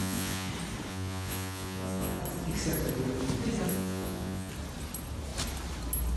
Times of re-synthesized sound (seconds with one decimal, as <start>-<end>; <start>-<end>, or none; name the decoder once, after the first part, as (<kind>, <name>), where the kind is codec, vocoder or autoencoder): 0.0-0.5 (vocoder, Vocos); 0.9-2.2; 3.7-4.5